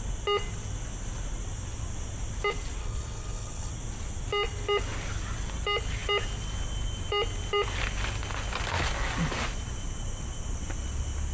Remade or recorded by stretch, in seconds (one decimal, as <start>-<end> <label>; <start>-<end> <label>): 0.0-2.8 recorded; 2.8-3.7 remade; 3.7-11.3 recorded